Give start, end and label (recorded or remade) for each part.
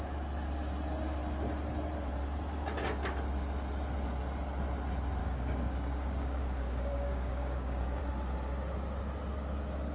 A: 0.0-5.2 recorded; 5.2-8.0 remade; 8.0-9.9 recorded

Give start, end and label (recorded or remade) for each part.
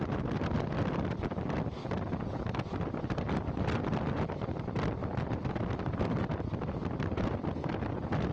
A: 0.0-8.3 remade